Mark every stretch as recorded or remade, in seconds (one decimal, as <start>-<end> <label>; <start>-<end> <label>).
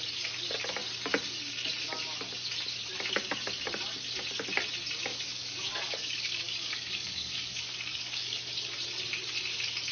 0.0-5.1 recorded; 5.1-8.5 remade; 8.5-9.9 recorded